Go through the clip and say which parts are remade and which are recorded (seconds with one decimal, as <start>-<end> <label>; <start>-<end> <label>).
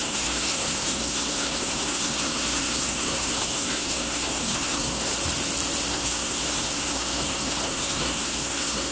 0.0-5.1 remade; 5.1-5.9 recorded; 5.9-8.9 remade